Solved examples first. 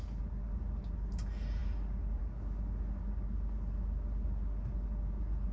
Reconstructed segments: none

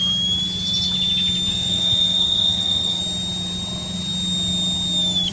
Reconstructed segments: 1.5-3.0 (codec, SNAC)